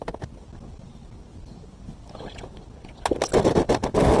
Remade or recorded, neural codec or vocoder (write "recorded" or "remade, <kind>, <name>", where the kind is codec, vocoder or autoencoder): recorded